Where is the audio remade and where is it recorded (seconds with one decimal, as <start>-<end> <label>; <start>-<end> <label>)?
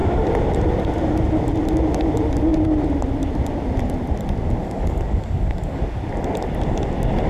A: 0.0-4.6 recorded; 4.6-5.8 remade; 5.8-7.3 recorded